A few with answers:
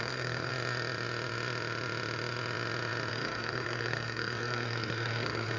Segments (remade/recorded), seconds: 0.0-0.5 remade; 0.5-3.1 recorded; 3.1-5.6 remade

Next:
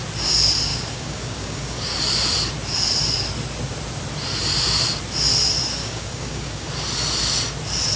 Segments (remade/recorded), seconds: 0.0-0.7 recorded; 0.7-2.0 remade; 2.0-5.8 recorded; 5.8-6.7 remade; 6.7-8.0 recorded

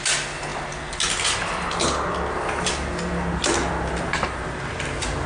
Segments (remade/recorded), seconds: 0.0-5.3 recorded

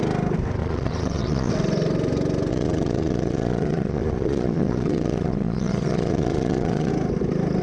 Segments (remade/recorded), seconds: 0.0-0.6 recorded; 0.6-1.5 remade; 1.5-2.5 recorded; 2.5-6.9 remade; 6.9-7.6 recorded

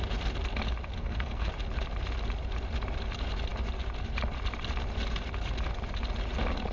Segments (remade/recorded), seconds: 0.0-1.0 recorded; 1.0-1.5 remade; 1.5-6.7 recorded

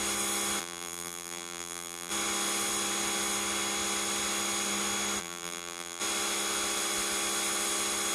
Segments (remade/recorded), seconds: 0.0-0.6 recorded; 0.6-2.1 remade; 2.1-5.2 recorded; 5.2-6.0 remade; 6.0-8.1 recorded

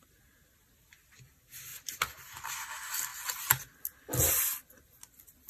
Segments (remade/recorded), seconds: 0.0-5.5 recorded

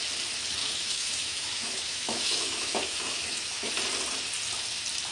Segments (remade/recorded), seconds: 0.0-0.6 recorded; 0.6-3.7 remade; 3.7-5.1 recorded